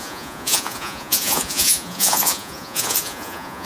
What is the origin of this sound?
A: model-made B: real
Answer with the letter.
A